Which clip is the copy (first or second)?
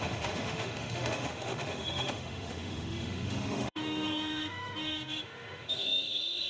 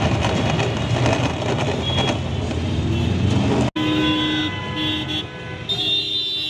first